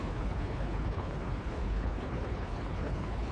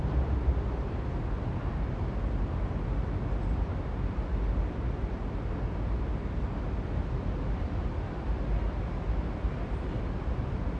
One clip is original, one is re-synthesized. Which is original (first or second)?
second